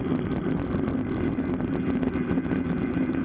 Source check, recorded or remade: recorded